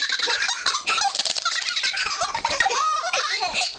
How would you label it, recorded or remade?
remade